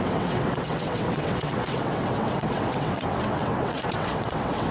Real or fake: fake